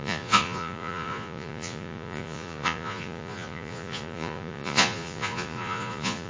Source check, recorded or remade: remade